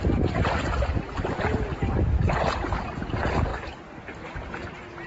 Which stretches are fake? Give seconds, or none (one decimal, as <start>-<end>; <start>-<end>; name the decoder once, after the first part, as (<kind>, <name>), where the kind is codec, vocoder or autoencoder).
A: none